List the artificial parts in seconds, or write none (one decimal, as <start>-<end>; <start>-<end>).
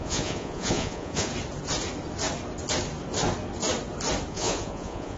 0.0-1.3; 4.3-5.2